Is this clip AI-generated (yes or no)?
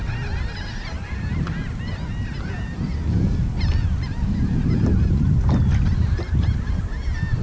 no